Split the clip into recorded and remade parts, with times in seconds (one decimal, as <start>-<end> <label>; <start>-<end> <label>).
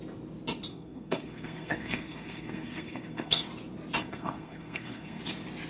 0.0-0.7 recorded; 0.7-3.5 remade; 3.5-4.0 recorded; 4.0-5.2 remade; 5.2-5.7 recorded